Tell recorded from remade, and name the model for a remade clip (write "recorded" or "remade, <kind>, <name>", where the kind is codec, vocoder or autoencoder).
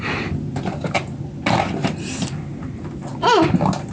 recorded